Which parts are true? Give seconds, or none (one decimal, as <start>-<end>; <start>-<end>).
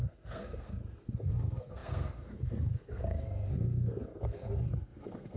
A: none